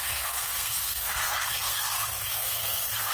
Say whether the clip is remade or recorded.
remade